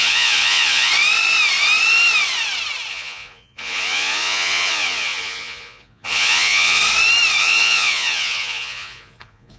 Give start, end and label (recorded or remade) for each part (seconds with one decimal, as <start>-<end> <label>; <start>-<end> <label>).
0.0-0.9 remade; 0.9-2.9 recorded; 2.9-6.8 remade; 6.8-7.4 recorded; 7.4-9.6 remade